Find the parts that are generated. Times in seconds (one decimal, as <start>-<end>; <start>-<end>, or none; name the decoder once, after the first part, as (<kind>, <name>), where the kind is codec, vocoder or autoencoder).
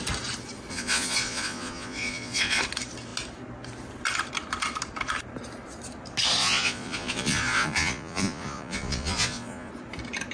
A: 0.7-2.6 (vocoder, Vocos); 6.4-9.7